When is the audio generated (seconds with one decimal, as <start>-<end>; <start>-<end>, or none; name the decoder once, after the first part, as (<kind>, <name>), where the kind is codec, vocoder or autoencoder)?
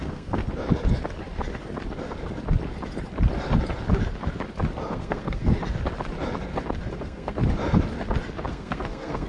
0.0-0.4 (codec, SNAC); 4.9-5.5; 6.9-7.4; 8.5-9.3